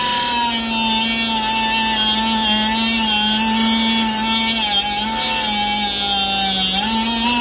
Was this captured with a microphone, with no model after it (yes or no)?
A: yes